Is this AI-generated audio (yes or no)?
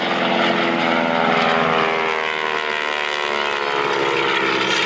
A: no